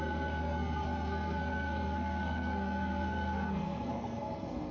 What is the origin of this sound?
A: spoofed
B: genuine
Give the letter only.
A